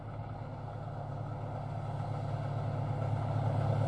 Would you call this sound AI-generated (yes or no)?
no